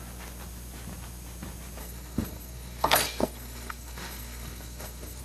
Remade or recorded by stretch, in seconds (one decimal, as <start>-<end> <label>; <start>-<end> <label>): 0.0-1.8 recorded; 1.8-5.2 remade